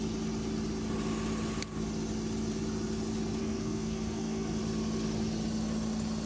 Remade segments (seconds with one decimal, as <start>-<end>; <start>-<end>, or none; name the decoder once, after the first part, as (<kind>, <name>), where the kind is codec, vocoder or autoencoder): 3.4-4.6 (codec, SNAC)